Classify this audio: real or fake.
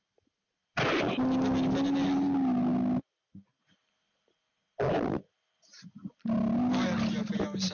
real